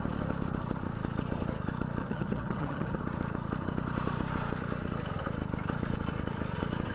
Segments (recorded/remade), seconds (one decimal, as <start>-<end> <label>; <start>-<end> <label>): 0.0-2.0 recorded; 2.0-3.0 remade; 3.0-6.9 recorded